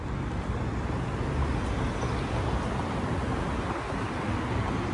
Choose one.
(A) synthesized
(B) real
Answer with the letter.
B